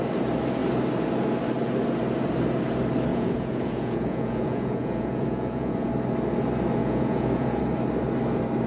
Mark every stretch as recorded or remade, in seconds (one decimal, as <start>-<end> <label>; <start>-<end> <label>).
0.0-3.1 recorded; 3.1-5.9 remade; 5.9-6.8 recorded; 6.8-7.6 remade; 7.6-8.7 recorded